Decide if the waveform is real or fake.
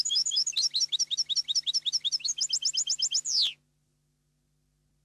real